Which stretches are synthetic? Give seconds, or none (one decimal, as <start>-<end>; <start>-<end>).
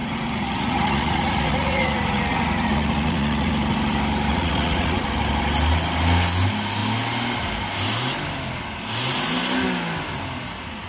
0.0-3.5; 4.3-5.0